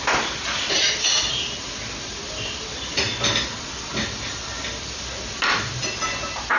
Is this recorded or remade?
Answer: recorded